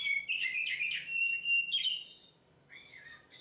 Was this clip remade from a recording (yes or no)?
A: no